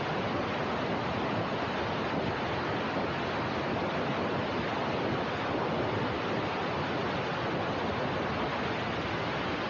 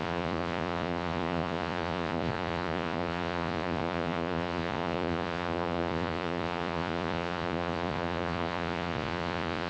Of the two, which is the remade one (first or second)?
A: second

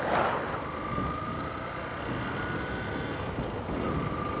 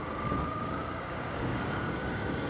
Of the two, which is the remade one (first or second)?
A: second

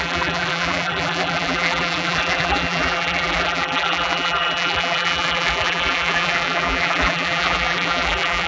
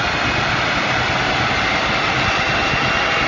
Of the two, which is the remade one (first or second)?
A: first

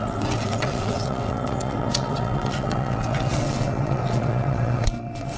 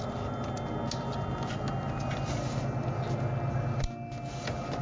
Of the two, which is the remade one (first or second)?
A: first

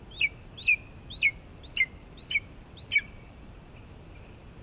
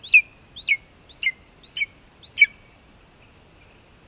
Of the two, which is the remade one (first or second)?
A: first